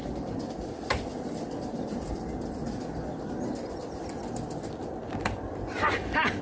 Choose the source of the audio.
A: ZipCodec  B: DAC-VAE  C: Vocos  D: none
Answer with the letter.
D